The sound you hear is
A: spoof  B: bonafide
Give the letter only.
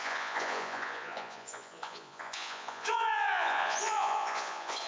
A